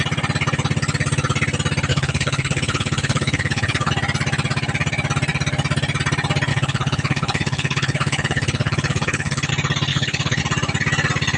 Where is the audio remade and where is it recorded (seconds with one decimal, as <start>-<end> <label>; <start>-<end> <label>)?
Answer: 0.0-1.9 recorded; 1.9-3.9 remade; 3.9-6.5 recorded; 6.5-9.5 remade; 9.5-9.9 recorded; 9.9-10.4 remade; 10.4-11.4 recorded